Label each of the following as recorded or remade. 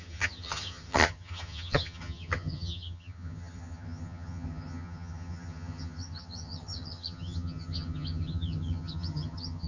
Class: remade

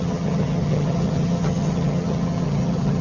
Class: remade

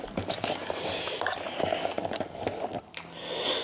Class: recorded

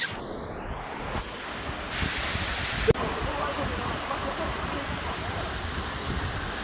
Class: recorded